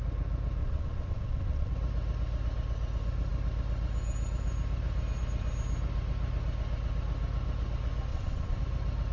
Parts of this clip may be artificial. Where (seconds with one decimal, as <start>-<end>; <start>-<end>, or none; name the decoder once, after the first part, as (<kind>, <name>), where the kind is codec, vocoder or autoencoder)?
0.6-1.7 (vocoder, WaveNeXt); 8.1-8.6